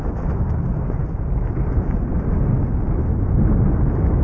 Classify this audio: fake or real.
real